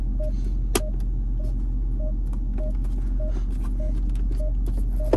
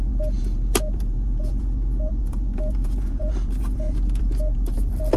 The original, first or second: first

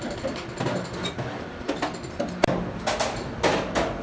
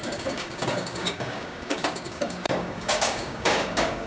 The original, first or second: first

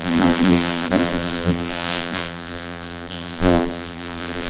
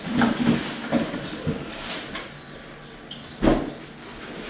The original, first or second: second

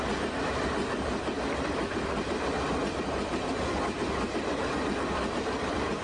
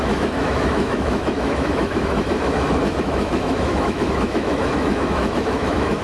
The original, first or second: first